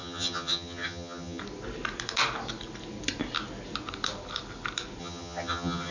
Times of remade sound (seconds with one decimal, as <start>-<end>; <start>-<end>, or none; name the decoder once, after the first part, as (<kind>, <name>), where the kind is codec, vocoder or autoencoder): 0.0-1.4 (vocoder, HiFi-GAN); 5.0-5.9